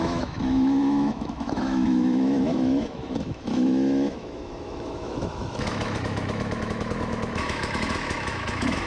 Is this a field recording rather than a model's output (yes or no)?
no